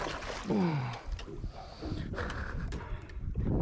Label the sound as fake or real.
real